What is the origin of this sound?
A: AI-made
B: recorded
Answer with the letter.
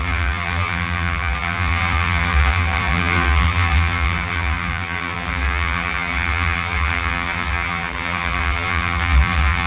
A